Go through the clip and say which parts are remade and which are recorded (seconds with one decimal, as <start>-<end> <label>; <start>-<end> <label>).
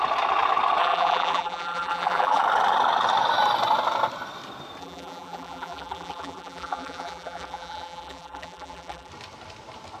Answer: 0.0-0.8 recorded; 0.8-2.4 remade; 2.4-4.8 recorded; 4.8-9.1 remade; 9.1-10.0 recorded